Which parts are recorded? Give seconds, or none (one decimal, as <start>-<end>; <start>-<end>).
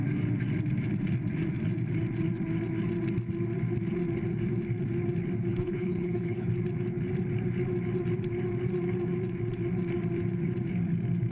0.0-5.5; 6.5-11.3